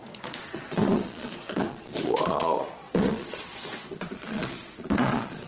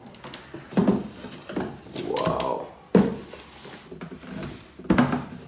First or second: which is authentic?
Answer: second